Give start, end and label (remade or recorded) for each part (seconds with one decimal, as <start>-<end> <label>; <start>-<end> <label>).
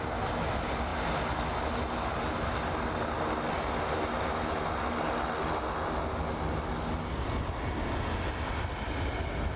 0.0-9.6 recorded